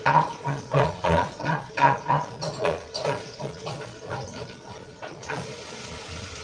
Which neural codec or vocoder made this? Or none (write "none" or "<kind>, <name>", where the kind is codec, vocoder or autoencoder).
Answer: vocoder, Vocos